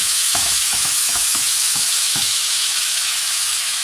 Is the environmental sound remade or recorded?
remade